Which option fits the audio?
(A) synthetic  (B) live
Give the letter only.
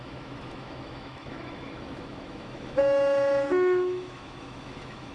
A